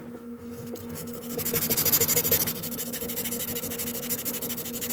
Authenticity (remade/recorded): remade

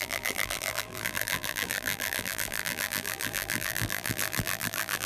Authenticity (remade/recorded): remade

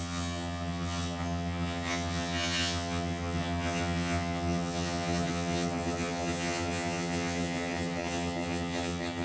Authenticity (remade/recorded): remade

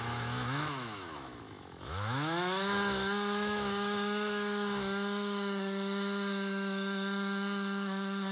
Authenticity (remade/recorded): remade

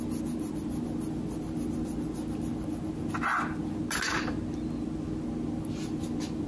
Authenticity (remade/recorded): recorded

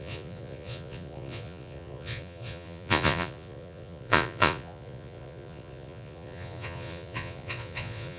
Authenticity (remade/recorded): remade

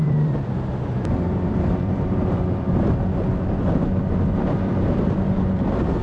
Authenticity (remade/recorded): remade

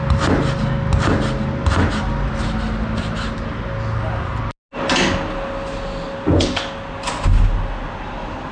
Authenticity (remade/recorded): recorded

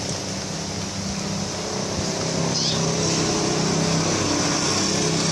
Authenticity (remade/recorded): recorded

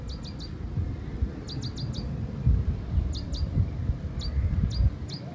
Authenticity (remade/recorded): recorded